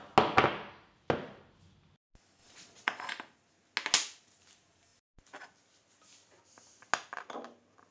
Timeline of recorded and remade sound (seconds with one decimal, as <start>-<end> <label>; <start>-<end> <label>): 0.0-2.4 recorded; 2.4-3.1 remade; 3.1-7.9 recorded